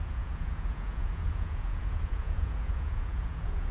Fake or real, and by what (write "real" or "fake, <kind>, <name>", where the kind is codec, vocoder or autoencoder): fake, vocoder, Vocos